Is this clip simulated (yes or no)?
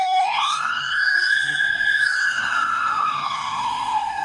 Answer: yes